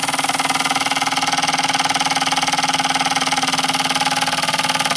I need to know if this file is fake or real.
real